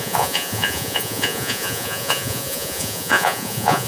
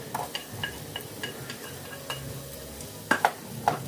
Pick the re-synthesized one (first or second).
first